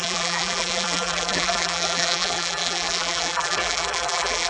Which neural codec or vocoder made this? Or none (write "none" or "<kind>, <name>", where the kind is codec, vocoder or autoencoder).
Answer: vocoder, BigVGAN v2